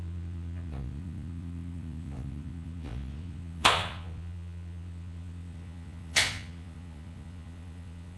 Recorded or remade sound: remade